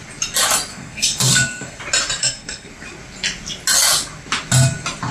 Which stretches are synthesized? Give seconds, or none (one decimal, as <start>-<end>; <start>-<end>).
0.7-1.8; 2.2-2.7